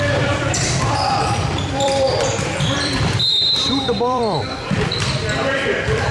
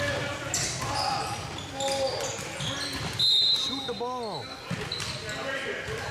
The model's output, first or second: first